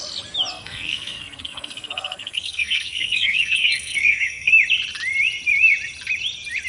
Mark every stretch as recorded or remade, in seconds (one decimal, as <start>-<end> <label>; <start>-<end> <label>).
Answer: 0.0-0.5 recorded; 0.5-4.5 remade; 4.5-6.7 recorded